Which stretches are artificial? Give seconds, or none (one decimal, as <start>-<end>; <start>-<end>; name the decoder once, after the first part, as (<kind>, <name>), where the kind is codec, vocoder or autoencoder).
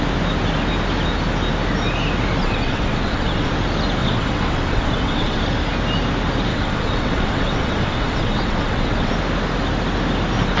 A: 2.4-3.5 (vocoder, WaveNeXt); 4.0-5.4; 6.5-9.1